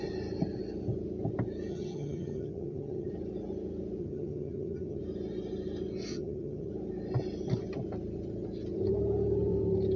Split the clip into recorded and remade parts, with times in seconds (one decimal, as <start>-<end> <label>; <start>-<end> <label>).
0.0-1.7 recorded; 1.7-3.1 remade; 3.1-4.0 recorded; 4.0-5.0 remade; 5.0-6.1 recorded; 6.1-6.7 remade; 6.7-10.0 recorded